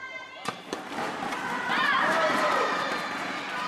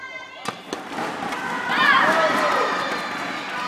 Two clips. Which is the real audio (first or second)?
second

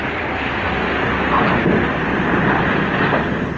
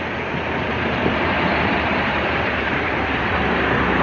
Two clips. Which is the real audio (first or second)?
first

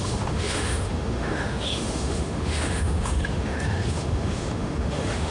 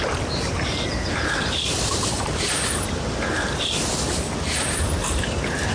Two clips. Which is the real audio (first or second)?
second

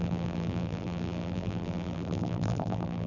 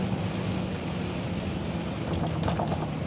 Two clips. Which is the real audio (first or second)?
second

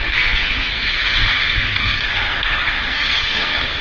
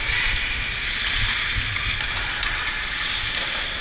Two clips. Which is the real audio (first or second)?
second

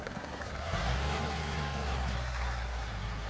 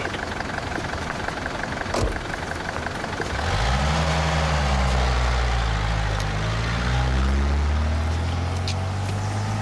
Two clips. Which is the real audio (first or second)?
second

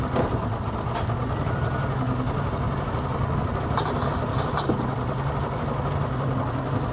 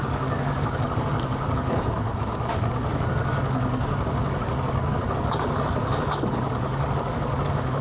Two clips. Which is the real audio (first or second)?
first